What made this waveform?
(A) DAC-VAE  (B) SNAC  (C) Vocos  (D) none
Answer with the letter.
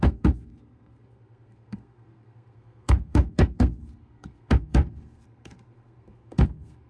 B